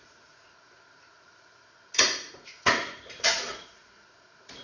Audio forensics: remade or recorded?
remade